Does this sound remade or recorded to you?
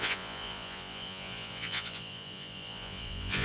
remade